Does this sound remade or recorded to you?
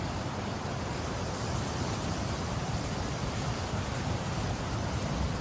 remade